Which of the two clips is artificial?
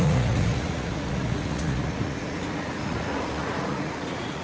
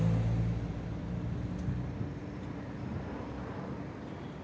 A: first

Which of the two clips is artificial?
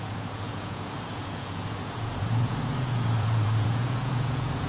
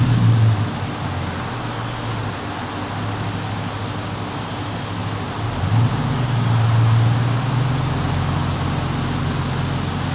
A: first